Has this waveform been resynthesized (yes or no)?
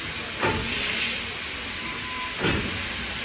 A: no